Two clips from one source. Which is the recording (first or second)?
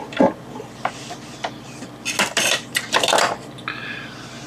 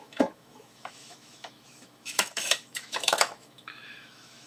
first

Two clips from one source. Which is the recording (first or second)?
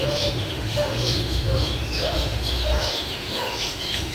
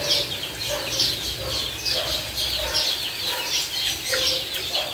second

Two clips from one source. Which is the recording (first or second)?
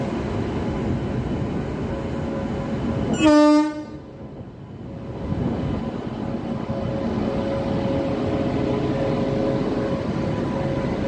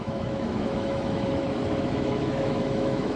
first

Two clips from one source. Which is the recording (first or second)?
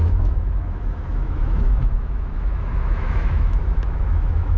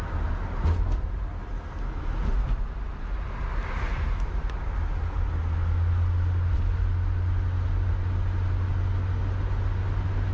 second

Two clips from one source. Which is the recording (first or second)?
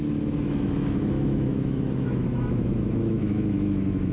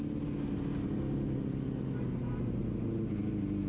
second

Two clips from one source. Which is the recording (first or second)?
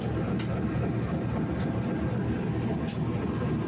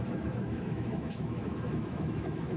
first